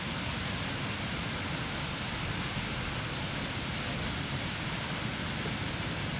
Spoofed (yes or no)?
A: no